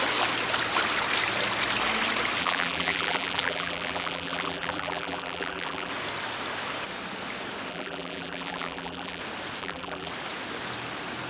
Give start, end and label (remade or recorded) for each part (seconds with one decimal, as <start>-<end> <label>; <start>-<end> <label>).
0.0-2.4 recorded; 2.4-5.9 remade; 5.9-7.7 recorded; 7.7-9.2 remade; 9.2-9.6 recorded; 9.6-10.1 remade; 10.1-11.3 recorded